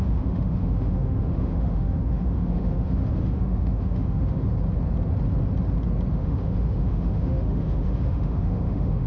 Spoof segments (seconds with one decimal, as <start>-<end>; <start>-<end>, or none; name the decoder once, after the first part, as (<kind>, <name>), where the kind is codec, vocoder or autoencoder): 0.0-4.5 (autoencoder, DAC-VAE); 6.1-9.1